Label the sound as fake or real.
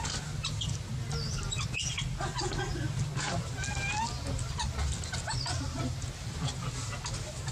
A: real